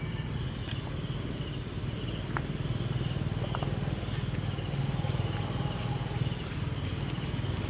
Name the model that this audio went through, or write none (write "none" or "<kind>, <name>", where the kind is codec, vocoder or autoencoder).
none